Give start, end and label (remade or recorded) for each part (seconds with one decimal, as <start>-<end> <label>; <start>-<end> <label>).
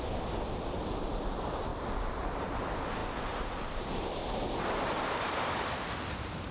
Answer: 0.0-3.0 remade; 3.0-3.6 recorded; 3.6-4.2 remade; 4.2-4.8 recorded; 4.8-6.5 remade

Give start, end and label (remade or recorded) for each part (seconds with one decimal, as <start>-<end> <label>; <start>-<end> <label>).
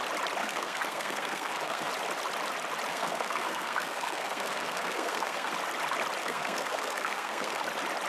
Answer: 0.0-0.4 recorded; 0.4-1.9 remade; 1.9-2.9 recorded; 2.9-5.5 remade; 5.5-6.2 recorded; 6.2-7.6 remade; 7.6-8.1 recorded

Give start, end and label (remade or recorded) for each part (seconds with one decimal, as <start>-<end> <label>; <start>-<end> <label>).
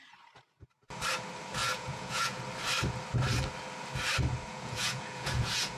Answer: 0.0-1.6 recorded; 1.6-2.4 remade; 2.4-4.5 recorded; 4.5-5.8 remade